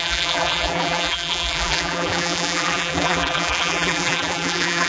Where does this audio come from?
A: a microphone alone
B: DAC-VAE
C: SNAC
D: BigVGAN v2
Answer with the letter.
D